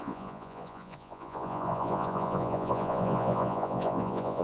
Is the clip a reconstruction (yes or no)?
yes